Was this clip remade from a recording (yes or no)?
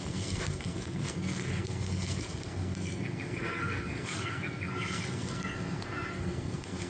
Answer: yes